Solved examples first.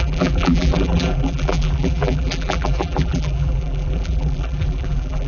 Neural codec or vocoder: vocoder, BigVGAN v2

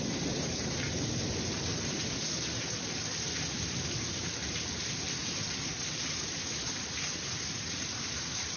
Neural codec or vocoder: vocoder, BigVGAN v2